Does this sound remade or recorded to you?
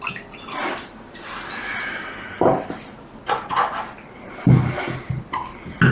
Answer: recorded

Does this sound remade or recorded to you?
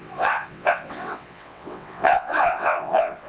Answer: remade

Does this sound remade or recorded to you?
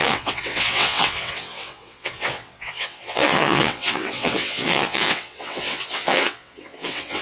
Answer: remade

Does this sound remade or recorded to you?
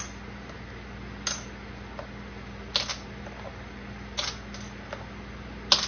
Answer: recorded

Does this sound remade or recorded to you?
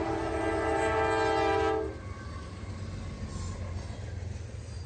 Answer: recorded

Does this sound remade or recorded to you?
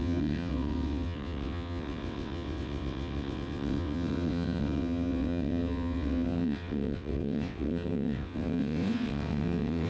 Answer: remade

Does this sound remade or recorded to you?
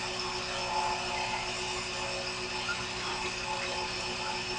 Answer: recorded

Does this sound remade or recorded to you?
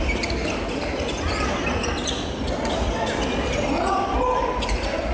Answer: recorded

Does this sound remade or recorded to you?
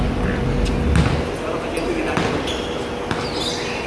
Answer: recorded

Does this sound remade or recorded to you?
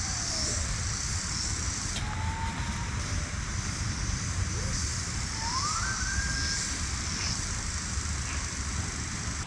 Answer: recorded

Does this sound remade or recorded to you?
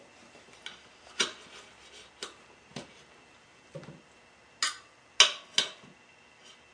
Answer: recorded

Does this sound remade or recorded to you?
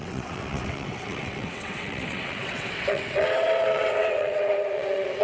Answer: remade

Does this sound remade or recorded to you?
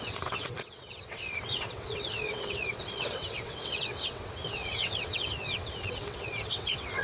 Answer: remade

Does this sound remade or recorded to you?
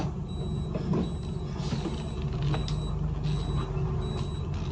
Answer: recorded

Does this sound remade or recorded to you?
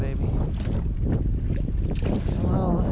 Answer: recorded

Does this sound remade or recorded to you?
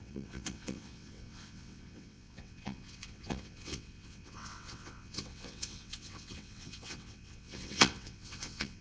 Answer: remade